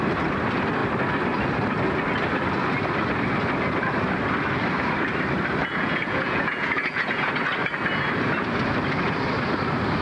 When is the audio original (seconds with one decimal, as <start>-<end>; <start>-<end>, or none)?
0.0-5.6; 7.3-10.0